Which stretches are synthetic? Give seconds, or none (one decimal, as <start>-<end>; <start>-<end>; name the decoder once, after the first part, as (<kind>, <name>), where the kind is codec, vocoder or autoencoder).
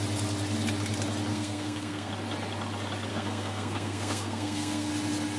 1.3-2.1 (codec, SNAC); 3.1-4.9